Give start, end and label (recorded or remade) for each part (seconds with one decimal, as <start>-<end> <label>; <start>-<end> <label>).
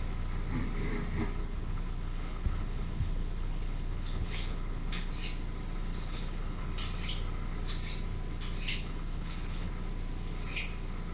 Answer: 0.0-1.4 recorded; 1.4-5.1 remade; 5.1-5.9 recorded; 5.9-6.7 remade; 6.7-8.7 recorded; 8.7-9.7 remade; 9.7-11.1 recorded